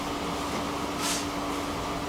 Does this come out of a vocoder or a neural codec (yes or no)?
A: no